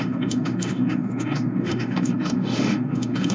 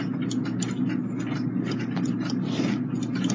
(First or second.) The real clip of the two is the second